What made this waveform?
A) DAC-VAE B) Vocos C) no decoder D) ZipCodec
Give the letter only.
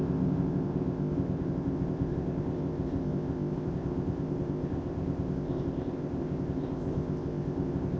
D